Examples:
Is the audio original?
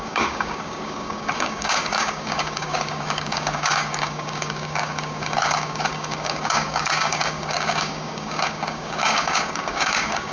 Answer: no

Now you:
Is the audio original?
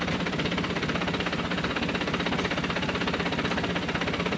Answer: yes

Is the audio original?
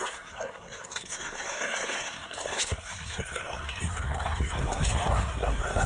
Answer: no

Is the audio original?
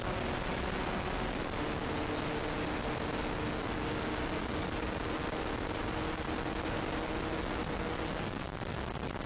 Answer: yes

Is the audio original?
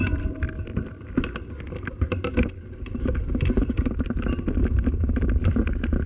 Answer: yes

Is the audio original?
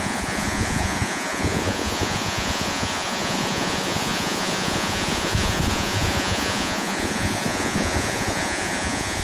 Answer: no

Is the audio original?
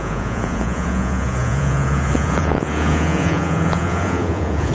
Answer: no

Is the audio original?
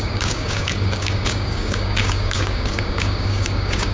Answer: no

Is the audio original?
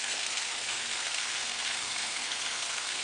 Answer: no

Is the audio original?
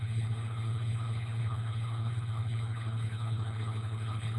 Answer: no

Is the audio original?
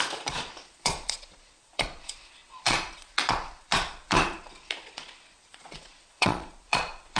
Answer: no